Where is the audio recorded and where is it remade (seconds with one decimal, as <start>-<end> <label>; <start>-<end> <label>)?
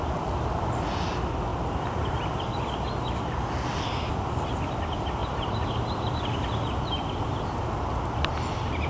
0.0-1.5 recorded; 1.5-2.1 remade; 2.1-5.2 recorded; 5.2-6.1 remade; 6.1-8.9 recorded